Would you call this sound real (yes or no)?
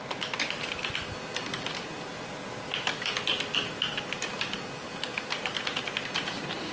yes